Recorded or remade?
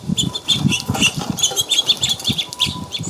recorded